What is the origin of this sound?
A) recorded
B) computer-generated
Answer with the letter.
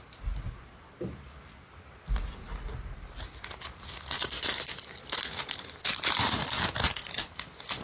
A